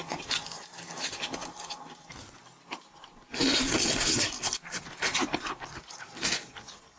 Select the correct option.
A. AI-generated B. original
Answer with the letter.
B